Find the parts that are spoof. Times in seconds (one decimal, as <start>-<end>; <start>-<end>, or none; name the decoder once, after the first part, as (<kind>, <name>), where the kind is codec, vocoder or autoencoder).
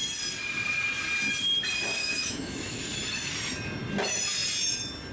2.0-2.8 (autoencoder, DAC-VAE)